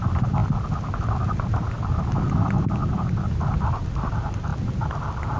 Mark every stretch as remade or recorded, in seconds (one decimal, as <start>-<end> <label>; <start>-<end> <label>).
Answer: 0.0-5.4 recorded